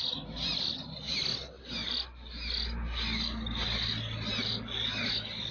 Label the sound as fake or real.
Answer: real